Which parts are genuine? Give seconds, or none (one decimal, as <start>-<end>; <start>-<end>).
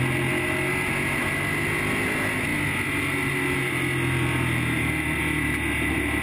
0.0-6.2